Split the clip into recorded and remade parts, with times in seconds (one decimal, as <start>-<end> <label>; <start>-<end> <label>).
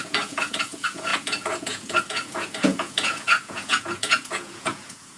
0.0-5.2 remade